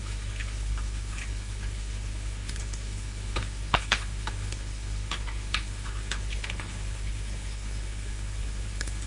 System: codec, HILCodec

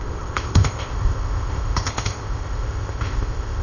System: codec, ZipCodec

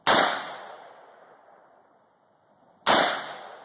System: none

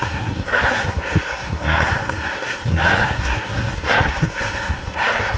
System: codec, SNAC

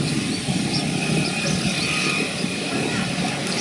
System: none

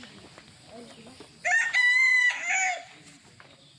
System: none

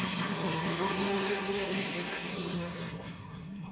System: codec, SNAC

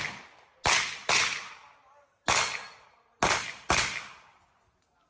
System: none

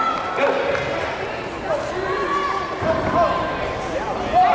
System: none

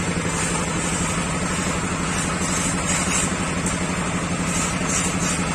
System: none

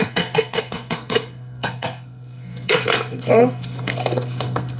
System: codec, SNAC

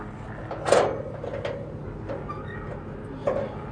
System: none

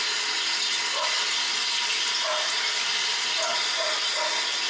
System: none